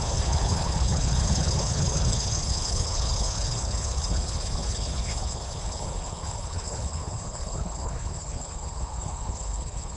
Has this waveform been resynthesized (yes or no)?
yes